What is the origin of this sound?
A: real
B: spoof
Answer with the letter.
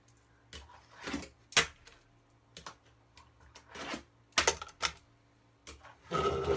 A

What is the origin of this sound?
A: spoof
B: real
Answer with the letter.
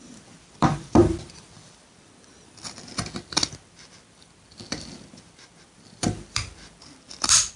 A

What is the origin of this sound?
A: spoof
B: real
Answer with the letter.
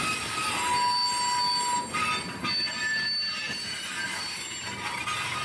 B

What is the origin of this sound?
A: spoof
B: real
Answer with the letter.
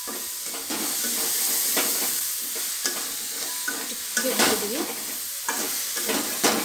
B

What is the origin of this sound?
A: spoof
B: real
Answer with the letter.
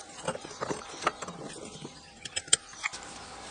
B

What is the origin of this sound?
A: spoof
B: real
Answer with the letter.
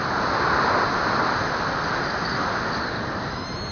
B